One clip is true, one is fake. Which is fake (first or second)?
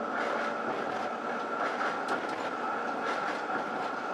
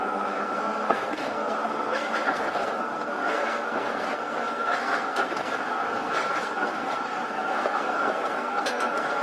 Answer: second